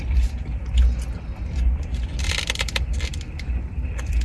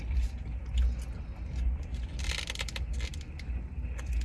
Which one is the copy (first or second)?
first